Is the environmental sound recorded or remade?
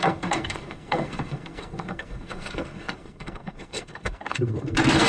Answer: remade